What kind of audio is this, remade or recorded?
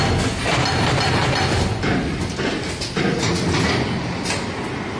recorded